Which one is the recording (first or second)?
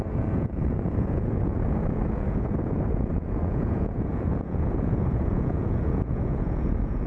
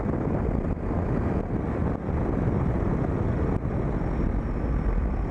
second